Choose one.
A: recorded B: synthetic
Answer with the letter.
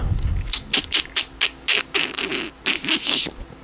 A